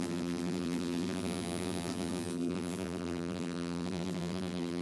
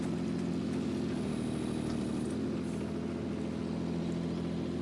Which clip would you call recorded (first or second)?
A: second